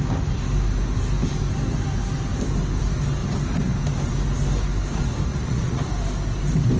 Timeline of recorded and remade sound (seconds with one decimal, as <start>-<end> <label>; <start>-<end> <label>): 0.0-5.3 recorded; 5.3-5.8 remade; 5.8-6.8 recorded